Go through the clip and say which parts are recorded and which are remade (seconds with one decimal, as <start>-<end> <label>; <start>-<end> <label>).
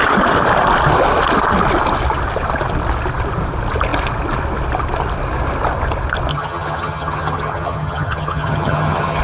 0.0-6.3 recorded; 6.3-9.2 remade